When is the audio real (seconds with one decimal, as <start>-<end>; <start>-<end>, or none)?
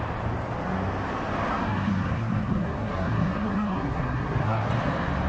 0.0-1.5; 4.7-5.3